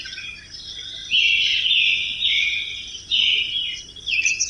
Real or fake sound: real